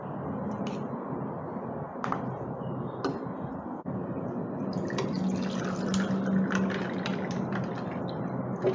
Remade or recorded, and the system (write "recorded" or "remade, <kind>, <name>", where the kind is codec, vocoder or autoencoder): recorded